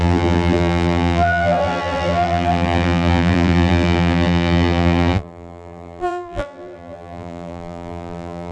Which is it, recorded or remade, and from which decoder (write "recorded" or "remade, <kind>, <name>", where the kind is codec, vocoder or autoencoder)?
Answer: remade, vocoder, BigVGAN v2